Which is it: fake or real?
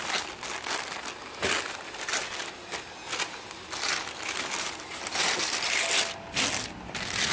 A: real